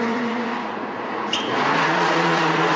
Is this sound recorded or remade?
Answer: remade